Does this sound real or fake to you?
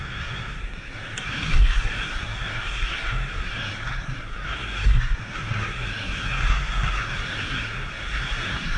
fake